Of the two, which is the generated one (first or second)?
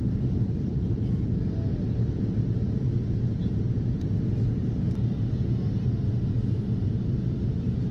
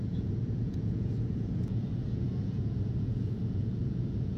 second